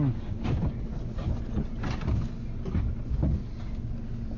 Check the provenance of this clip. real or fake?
real